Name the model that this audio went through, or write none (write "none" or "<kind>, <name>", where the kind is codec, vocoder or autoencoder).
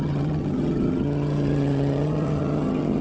vocoder, HiFi-GAN